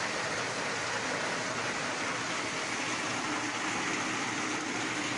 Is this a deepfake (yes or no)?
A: no